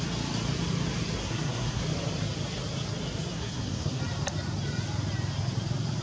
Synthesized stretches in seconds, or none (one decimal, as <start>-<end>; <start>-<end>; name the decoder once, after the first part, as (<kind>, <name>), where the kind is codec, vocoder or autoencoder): 1.2-1.8 (codec, SNAC); 3.3-4.0